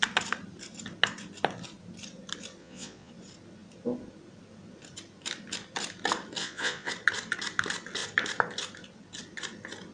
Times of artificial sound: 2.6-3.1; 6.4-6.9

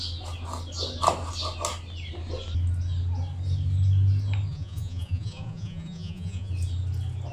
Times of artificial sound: 4.5-6.5